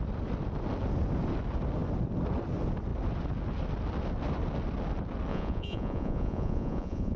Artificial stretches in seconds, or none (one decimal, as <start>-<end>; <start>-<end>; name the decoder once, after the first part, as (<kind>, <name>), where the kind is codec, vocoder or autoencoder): 5.3-7.2 (vocoder, Vocos)